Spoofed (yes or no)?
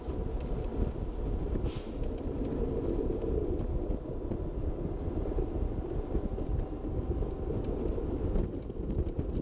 no